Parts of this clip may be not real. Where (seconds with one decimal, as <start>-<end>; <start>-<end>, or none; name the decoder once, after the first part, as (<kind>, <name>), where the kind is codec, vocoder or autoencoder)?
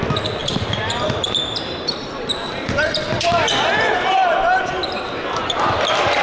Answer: 0.4-4.1 (vocoder, BigVGAN v2); 5.4-6.2